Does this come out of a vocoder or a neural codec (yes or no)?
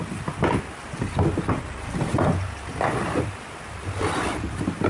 no